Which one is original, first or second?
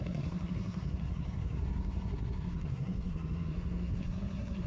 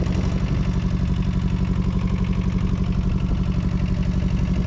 second